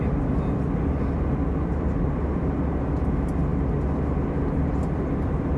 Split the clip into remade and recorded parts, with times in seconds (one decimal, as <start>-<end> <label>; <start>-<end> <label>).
0.0-5.6 recorded